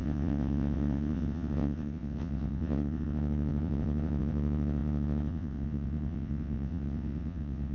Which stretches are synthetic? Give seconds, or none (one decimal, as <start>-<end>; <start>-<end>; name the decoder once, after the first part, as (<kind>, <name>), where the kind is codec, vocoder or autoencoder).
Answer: 0.0-7.7 (vocoder, WaveNeXt)

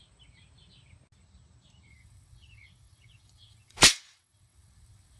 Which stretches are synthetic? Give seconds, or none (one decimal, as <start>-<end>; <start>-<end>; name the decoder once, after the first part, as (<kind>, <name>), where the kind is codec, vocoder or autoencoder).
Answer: 1.9-5.2 (vocoder, WaveNeXt)

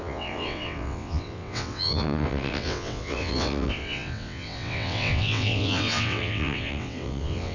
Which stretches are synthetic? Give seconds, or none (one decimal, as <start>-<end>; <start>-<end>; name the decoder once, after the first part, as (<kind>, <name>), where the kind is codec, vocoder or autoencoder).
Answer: 0.0-7.5 (vocoder, WaveNeXt)